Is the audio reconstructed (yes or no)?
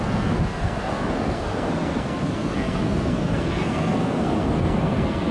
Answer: yes